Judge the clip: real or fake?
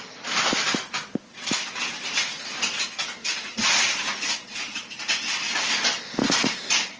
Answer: real